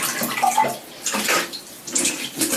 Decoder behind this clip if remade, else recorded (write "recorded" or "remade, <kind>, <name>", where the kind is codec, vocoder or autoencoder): remade, vocoder, BigVGAN v2